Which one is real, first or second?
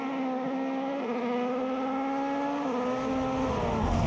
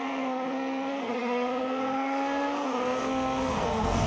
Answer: first